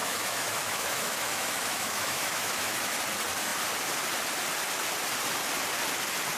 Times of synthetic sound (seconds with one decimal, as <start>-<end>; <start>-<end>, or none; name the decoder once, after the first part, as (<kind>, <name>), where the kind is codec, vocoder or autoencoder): 0.0-3.0 (autoencoder, DAC-VAE)